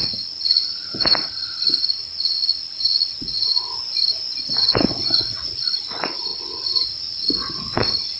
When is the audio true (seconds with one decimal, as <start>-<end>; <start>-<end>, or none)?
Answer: 3.7-4.4